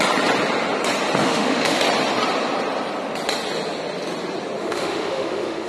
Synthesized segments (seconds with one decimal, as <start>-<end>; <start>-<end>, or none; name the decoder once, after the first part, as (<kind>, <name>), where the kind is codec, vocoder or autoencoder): 1.2-1.8 (autoencoder, DAC-VAE); 4.6-5.7